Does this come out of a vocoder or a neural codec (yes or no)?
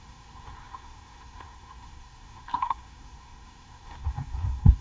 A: yes